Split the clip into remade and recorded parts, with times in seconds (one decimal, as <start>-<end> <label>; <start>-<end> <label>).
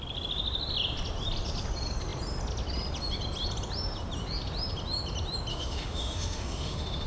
0.0-5.5 recorded; 5.5-7.1 remade